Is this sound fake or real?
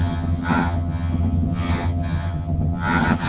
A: fake